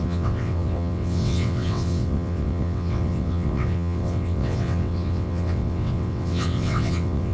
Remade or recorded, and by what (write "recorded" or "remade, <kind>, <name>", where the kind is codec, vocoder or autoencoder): remade, vocoder, WaveNeXt